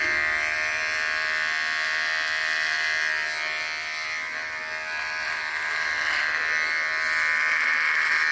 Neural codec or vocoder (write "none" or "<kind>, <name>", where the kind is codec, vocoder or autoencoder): vocoder, BigVGAN v2